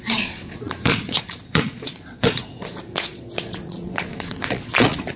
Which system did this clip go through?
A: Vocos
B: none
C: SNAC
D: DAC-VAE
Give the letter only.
A